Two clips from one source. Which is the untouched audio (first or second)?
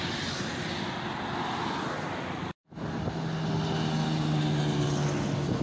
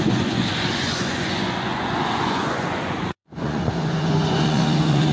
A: first